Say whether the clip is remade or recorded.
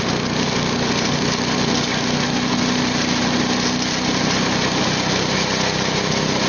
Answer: recorded